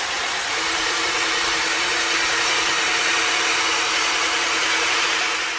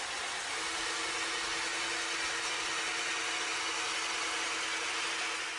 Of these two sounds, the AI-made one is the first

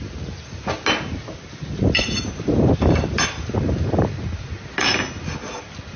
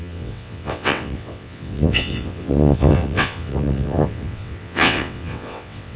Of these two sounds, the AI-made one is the second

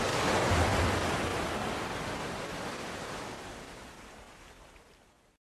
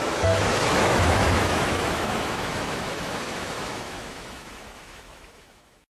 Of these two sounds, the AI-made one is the second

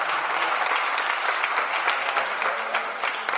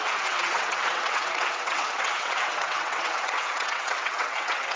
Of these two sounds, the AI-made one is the second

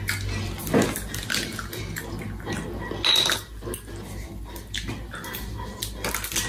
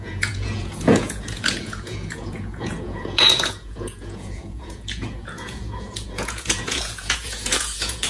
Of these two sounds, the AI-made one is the second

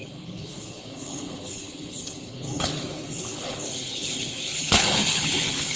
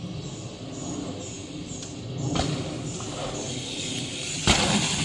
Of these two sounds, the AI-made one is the first